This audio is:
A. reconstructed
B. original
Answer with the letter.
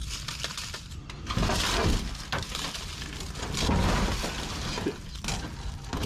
B